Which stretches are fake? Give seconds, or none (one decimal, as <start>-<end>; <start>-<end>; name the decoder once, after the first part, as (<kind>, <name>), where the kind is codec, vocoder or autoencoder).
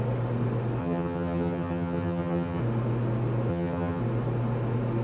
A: 0.8-2.6 (vocoder, HiFi-GAN); 3.5-4.0